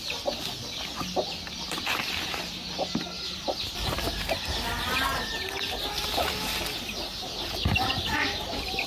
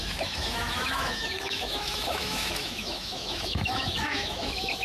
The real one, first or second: first